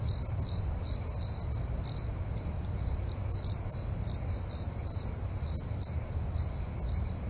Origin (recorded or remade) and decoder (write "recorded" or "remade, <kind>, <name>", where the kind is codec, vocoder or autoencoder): recorded